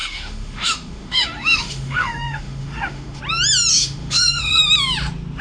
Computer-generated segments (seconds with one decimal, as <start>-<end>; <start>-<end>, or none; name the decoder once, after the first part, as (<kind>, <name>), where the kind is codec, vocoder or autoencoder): 0.0-3.2 (autoencoder, DAC-VAE); 3.7-4.6